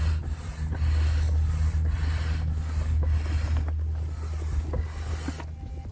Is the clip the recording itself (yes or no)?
yes